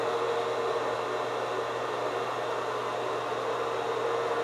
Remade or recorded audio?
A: recorded